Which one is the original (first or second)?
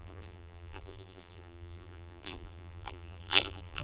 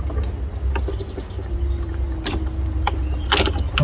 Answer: second